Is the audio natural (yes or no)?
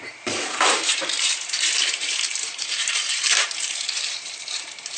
no